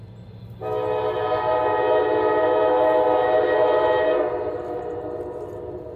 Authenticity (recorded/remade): recorded